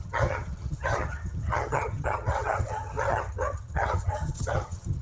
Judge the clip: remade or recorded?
remade